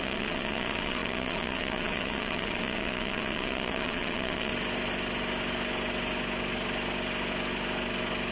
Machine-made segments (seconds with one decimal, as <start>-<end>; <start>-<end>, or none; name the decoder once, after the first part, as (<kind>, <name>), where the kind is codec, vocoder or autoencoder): 0.0-4.5 (vocoder, WaveNeXt)